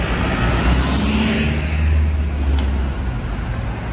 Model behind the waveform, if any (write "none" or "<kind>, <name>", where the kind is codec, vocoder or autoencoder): none